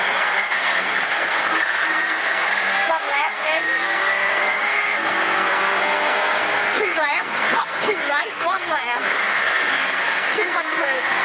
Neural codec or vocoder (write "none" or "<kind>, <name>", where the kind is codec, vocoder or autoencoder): codec, SNAC